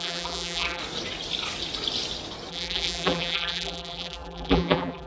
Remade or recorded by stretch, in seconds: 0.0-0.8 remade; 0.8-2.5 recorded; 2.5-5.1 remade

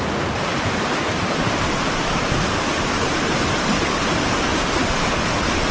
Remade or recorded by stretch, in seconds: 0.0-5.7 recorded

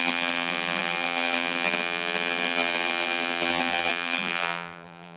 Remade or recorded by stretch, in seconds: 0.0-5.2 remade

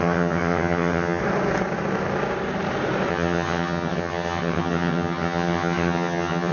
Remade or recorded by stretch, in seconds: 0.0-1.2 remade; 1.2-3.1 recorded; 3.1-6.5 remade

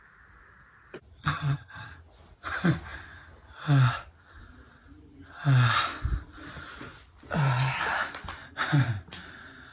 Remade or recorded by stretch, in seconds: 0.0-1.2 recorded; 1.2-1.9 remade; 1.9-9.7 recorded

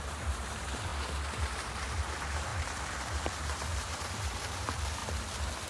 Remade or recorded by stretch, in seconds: 0.0-0.9 remade; 0.9-1.4 recorded; 1.4-5.0 remade; 5.0-5.7 recorded